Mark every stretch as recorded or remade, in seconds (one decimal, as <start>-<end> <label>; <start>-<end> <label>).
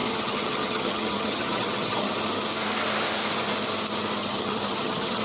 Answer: 0.0-2.1 remade; 2.1-4.2 recorded; 4.2-5.2 remade